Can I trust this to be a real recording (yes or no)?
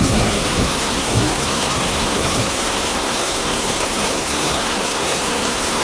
no